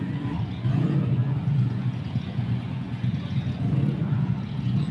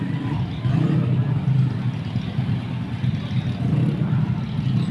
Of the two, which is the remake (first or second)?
first